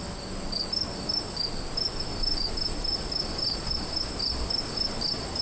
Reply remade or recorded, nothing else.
recorded